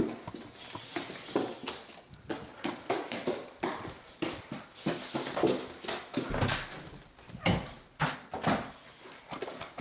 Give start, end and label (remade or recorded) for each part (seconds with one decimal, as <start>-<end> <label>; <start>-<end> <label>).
0.0-9.8 recorded